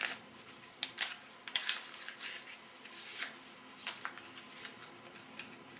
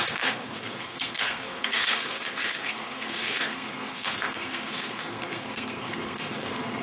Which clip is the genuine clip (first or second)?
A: first